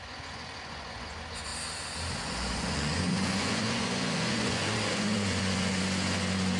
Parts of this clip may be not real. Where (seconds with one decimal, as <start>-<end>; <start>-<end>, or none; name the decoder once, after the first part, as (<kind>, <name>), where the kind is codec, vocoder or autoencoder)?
0.0-1.5 (vocoder, Vocos); 2.2-6.6